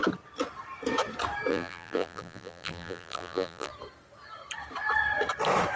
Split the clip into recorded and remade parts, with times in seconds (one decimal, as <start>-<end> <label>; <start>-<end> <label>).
0.0-1.5 recorded; 1.5-3.7 remade; 3.7-5.8 recorded